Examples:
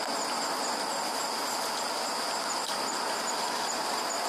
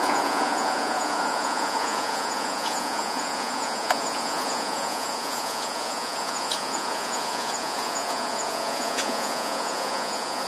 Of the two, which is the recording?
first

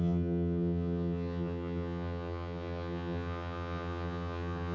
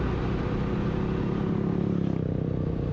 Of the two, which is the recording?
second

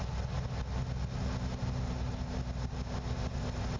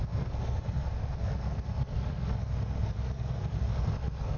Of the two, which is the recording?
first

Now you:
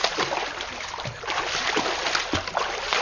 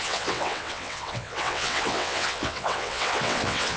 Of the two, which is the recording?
first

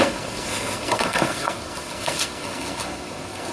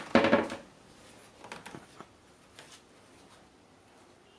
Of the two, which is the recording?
second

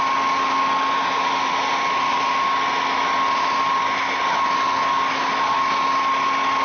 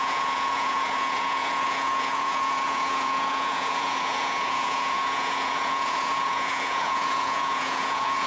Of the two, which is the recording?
first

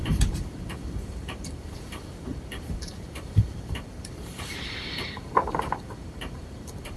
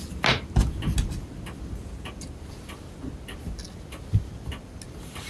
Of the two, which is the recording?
second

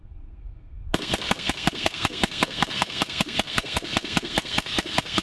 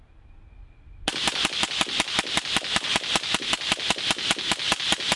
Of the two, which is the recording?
second